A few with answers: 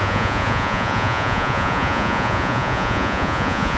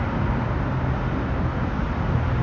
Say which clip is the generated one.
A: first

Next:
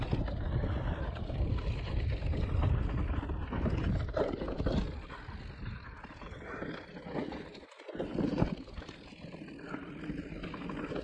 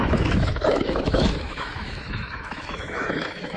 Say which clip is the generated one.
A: second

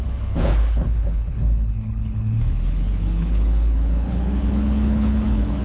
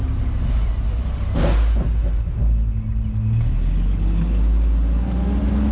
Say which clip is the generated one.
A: first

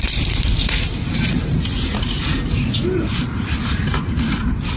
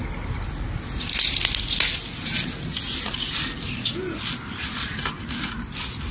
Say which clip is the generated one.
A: first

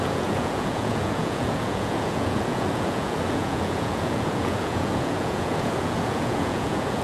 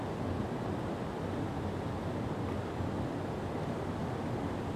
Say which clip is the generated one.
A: first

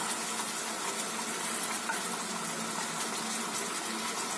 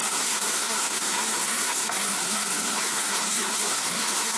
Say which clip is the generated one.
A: second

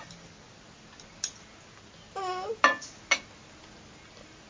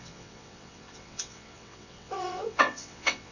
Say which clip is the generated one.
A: second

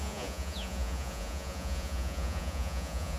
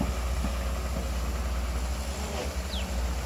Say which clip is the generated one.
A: first